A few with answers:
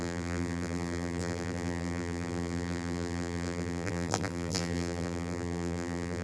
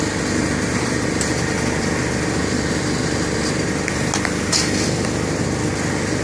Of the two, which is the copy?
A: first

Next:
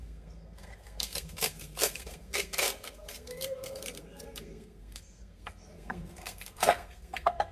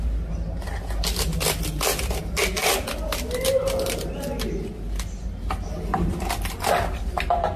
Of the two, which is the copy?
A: first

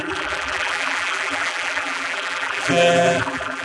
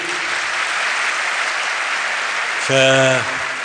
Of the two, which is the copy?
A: first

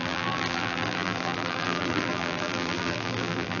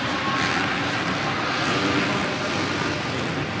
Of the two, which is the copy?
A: first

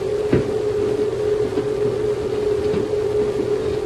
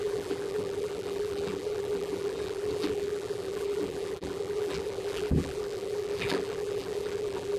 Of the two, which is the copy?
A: second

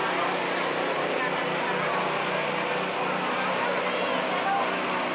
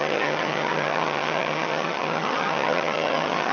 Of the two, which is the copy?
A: second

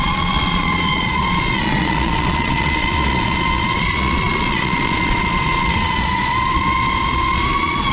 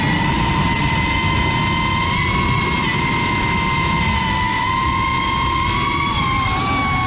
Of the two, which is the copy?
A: first